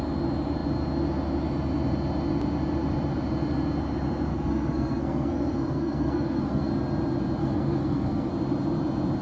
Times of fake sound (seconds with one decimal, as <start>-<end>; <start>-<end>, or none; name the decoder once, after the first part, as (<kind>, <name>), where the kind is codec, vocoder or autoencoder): 4.3-6.7 (codec, SNAC); 7.4-8.3